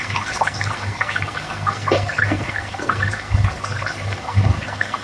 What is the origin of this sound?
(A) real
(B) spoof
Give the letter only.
B